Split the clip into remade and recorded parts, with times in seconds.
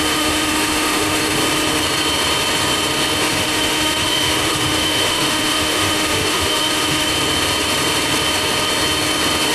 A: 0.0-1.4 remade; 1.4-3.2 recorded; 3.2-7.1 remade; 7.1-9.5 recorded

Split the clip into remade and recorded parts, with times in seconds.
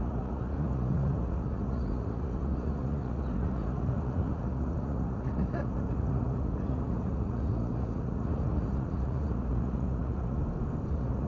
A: 0.0-10.4 remade; 10.4-10.9 recorded; 10.9-11.3 remade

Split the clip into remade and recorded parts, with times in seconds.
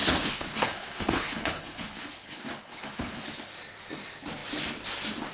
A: 0.0-3.2 remade; 3.2-5.3 recorded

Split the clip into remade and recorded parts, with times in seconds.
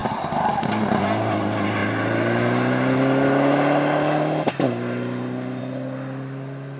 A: 0.0-6.8 recorded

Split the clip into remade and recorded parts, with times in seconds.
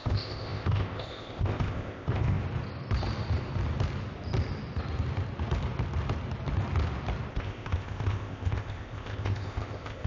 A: 0.0-2.4 remade; 2.4-7.3 recorded; 7.3-10.1 remade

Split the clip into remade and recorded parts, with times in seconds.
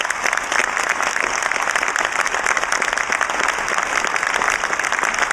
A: 0.0-5.3 recorded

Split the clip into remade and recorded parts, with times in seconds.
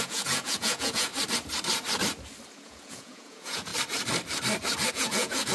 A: 0.0-1.1 remade; 1.1-2.5 recorded; 2.5-3.7 remade; 3.7-4.9 recorded; 4.9-5.5 remade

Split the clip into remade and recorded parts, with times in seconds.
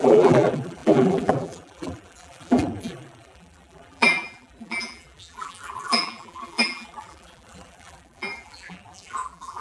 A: 0.0-9.6 remade